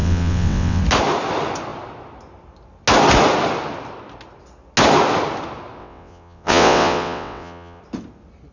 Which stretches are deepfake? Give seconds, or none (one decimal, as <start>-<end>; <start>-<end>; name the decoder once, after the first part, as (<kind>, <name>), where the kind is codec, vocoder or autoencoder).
0.0-0.8 (vocoder, WaveNeXt); 5.8-7.8